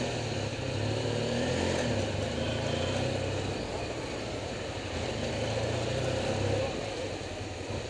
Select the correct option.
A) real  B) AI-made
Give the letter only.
A